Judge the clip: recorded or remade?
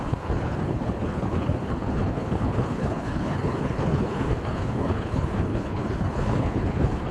remade